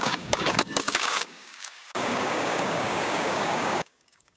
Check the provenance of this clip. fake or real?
fake